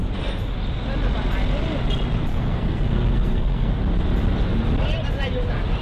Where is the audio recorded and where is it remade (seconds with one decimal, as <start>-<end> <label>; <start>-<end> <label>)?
0.0-2.3 recorded; 2.3-3.7 remade; 3.7-5.8 recorded